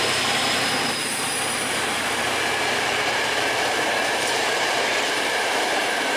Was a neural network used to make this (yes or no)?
yes